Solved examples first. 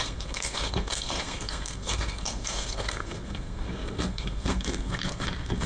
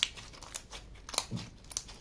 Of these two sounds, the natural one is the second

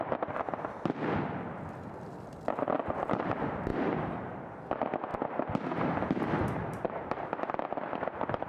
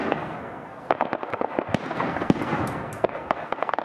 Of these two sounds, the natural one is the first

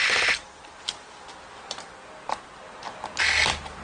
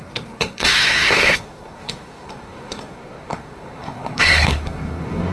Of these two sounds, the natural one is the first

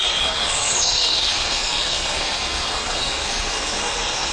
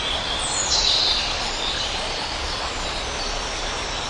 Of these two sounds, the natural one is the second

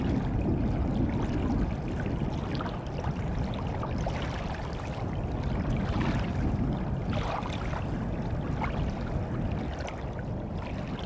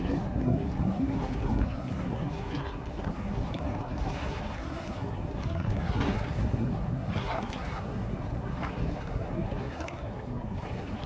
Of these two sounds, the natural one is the first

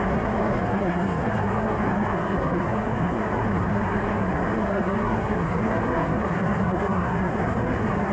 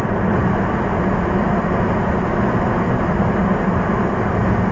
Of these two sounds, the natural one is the second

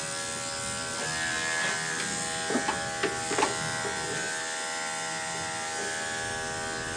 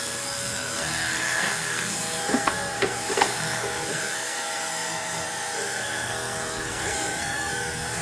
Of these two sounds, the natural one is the first